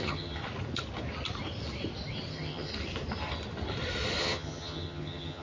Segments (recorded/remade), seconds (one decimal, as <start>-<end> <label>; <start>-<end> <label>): 0.0-0.4 remade; 0.4-2.3 recorded; 2.3-2.7 remade; 2.7-4.2 recorded; 4.2-5.4 remade